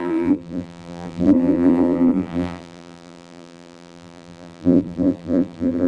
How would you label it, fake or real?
fake